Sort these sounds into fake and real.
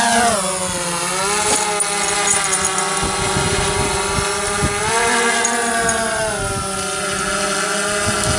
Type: real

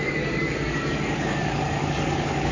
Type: fake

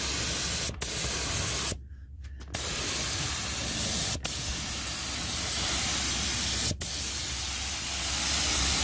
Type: real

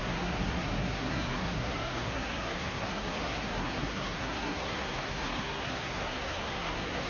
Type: fake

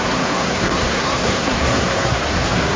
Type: fake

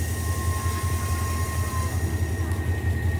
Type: real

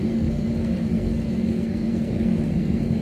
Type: fake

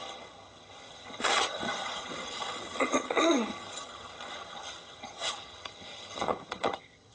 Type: fake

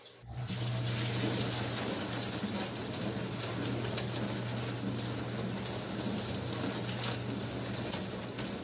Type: real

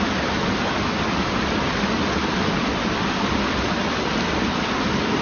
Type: real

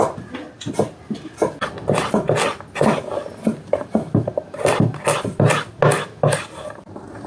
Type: real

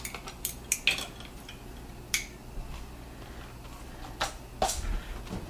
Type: real